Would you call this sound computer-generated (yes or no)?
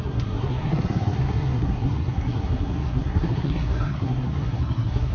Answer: yes